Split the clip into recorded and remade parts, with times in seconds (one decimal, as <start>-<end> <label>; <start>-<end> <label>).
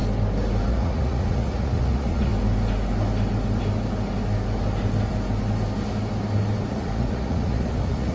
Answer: 0.0-0.7 recorded; 0.7-2.3 remade; 2.3-6.7 recorded; 6.7-8.1 remade